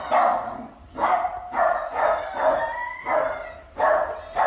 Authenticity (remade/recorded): recorded